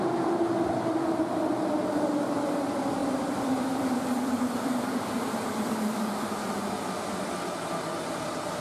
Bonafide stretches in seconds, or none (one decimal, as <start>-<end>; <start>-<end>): 0.0-3.0; 6.1-8.6